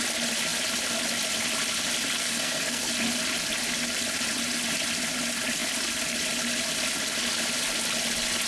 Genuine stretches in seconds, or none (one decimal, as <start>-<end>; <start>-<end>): 0.0-2.2; 2.9-8.5

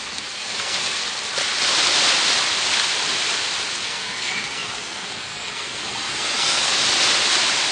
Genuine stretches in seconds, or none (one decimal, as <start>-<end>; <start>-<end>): 1.0-3.7; 6.8-7.7

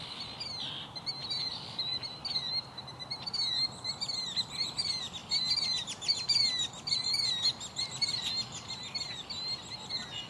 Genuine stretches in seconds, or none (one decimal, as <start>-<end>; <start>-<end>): 0.0-10.3

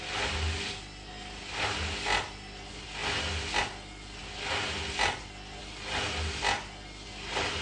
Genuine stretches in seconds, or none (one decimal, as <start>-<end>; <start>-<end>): 0.0-7.6

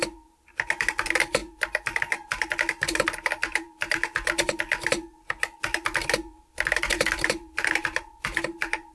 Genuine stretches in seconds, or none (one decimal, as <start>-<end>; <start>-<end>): 0.0-8.9

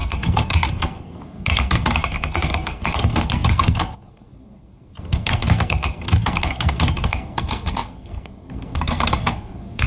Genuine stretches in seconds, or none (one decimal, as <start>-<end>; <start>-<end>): none

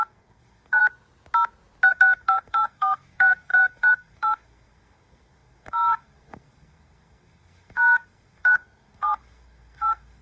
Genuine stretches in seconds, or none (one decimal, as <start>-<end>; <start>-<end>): 0.8-1.9